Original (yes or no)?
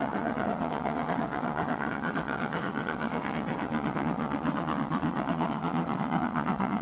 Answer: no